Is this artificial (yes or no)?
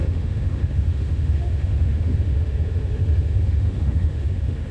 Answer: yes